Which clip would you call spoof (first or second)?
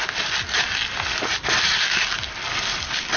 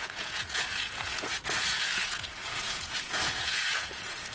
second